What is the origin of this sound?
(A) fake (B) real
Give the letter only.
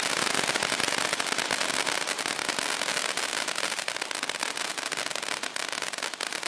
B